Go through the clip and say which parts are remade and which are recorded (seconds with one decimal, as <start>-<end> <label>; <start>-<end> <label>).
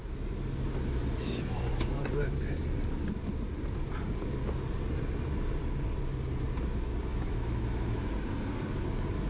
0.0-7.1 recorded; 7.1-8.1 remade; 8.1-9.3 recorded